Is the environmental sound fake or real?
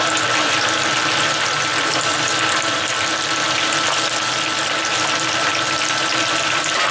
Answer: real